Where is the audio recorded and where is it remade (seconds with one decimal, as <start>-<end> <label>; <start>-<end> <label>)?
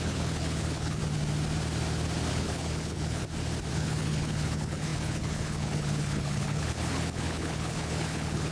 0.0-1.0 remade; 1.0-2.3 recorded; 2.3-3.2 remade; 3.2-3.7 recorded; 3.7-8.5 remade